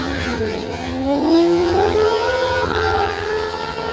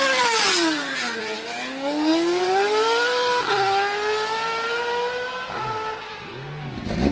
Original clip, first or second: second